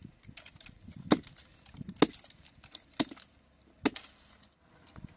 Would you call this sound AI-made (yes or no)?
no